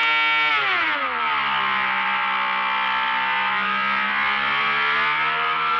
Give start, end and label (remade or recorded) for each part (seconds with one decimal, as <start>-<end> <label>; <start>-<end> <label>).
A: 0.0-5.8 recorded